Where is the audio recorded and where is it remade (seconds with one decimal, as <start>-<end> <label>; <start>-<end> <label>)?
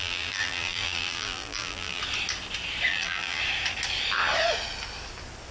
0.0-2.0 remade; 2.0-2.9 recorded; 2.9-3.4 remade; 3.4-5.5 recorded